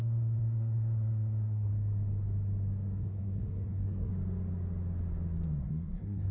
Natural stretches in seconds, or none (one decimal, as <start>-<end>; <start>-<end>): 1.7-3.0; 4.1-5.6